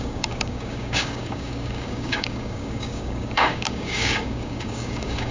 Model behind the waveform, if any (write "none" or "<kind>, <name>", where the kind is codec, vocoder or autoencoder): codec, DAC